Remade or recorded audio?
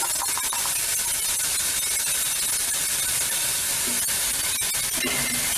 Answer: recorded